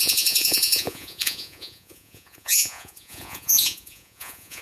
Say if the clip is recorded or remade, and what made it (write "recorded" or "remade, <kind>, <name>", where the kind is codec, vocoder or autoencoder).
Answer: remade, vocoder, Vocos